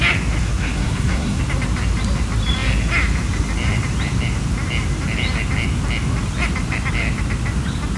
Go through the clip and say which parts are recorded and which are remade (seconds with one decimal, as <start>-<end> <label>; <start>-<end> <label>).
0.0-0.4 recorded; 0.4-1.4 remade; 1.4-8.0 recorded